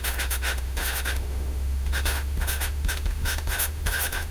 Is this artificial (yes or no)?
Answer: yes